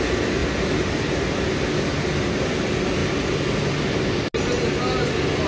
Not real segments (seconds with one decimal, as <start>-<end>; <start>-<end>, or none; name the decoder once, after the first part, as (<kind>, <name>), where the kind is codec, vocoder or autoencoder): none

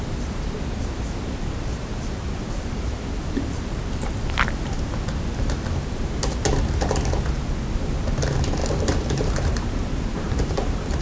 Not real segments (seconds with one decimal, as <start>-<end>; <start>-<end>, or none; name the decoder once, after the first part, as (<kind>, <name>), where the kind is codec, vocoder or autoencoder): 8.6-11.0 (vocoder, BigVGAN v2)

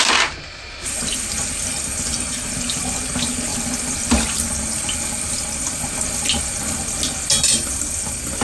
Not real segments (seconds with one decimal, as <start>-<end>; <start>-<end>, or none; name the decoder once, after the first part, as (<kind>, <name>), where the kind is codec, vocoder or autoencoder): none

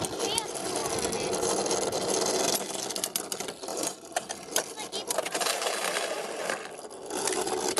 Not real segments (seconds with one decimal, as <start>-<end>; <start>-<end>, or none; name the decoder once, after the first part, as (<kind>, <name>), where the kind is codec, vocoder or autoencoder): 3.7-4.3 (vocoder, BigVGAN v2); 5.0-6.5

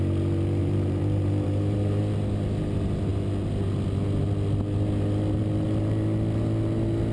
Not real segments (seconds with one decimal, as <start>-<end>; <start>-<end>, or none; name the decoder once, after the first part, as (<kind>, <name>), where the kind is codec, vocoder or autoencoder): 0.6-2.0 (vocoder, BigVGAN v2)